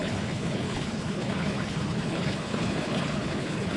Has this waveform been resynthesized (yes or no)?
yes